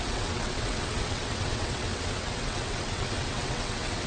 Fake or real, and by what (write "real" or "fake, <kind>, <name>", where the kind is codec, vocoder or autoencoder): fake, vocoder, WaveNeXt